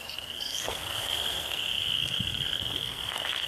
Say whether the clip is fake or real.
fake